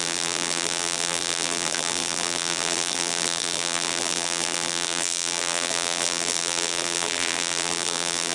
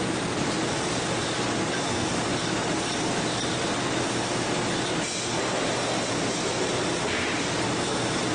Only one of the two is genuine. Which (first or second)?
second